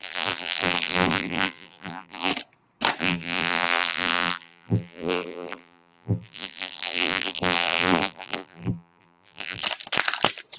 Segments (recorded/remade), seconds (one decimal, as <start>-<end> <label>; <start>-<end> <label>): 0.0-2.3 remade; 2.3-3.0 recorded; 3.0-9.6 remade; 9.6-10.6 recorded